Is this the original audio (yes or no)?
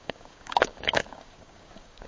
no